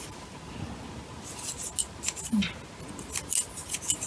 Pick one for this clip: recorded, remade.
recorded